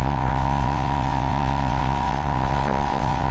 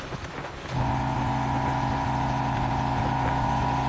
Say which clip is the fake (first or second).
first